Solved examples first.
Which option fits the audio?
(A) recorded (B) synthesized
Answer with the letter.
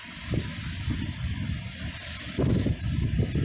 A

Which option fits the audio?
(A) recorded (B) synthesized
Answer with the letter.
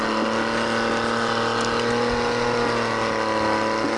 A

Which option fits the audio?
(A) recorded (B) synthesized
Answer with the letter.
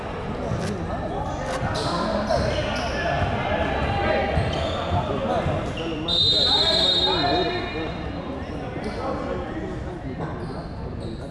A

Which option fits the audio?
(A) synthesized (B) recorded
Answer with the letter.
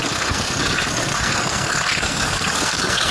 A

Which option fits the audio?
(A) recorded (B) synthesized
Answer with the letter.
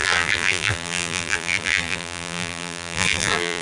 B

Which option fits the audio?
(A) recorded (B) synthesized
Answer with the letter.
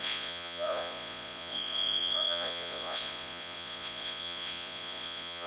B